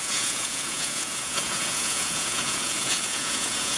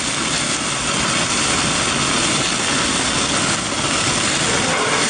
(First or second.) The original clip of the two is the second